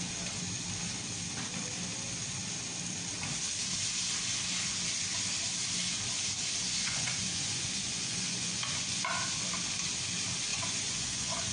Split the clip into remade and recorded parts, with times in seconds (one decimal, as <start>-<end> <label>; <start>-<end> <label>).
0.0-6.6 recorded; 6.6-9.1 remade; 9.1-10.5 recorded; 10.5-11.5 remade